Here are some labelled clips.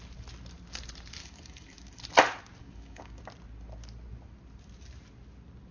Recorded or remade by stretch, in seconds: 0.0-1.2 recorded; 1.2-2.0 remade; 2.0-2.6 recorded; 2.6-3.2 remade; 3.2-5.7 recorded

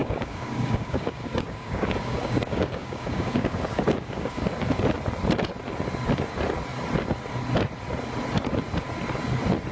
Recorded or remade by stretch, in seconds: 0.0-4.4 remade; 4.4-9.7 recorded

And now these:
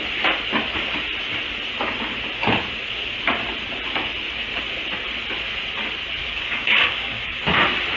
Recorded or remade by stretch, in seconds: 0.0-6.2 recorded; 6.2-7.4 remade; 7.4-8.0 recorded

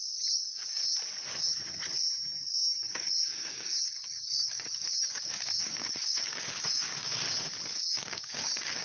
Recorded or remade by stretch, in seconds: 0.0-0.8 remade; 0.8-2.8 recorded; 2.8-7.1 remade; 7.1-7.9 recorded; 7.9-8.8 remade